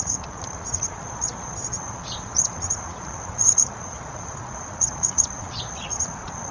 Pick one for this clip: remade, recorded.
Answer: remade